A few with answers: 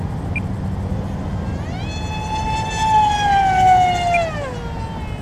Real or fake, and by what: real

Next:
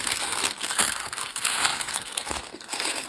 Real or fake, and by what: fake, codec, SNAC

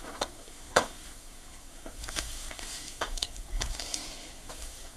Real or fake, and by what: fake, codec, SNAC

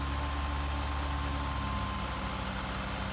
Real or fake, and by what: real